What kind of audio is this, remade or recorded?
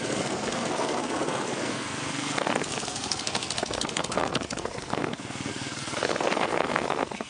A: remade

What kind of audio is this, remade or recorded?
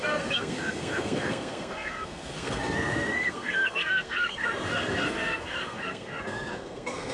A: remade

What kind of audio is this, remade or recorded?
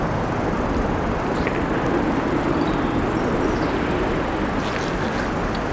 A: recorded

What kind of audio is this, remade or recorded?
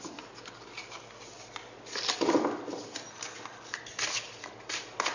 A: recorded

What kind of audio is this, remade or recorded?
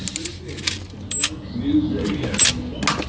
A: recorded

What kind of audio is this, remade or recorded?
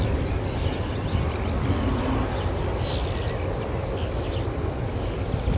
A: recorded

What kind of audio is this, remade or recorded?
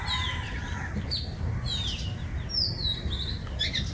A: recorded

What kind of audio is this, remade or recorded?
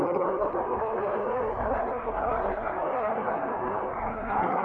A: remade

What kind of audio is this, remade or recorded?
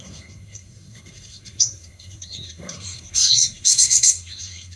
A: remade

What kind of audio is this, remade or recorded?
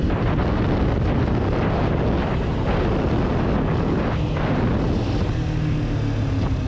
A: recorded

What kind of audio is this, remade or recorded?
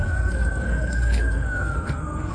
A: remade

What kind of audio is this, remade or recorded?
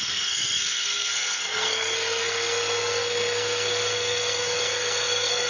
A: remade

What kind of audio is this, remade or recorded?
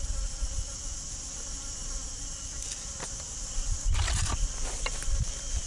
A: recorded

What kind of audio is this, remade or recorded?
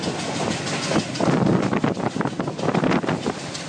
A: recorded